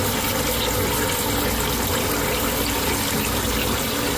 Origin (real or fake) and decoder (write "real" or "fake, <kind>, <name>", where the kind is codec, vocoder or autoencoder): real